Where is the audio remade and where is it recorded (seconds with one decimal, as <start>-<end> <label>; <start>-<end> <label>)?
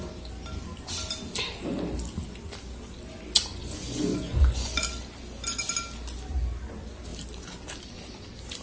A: 0.0-3.5 recorded; 3.5-4.8 remade; 4.8-8.6 recorded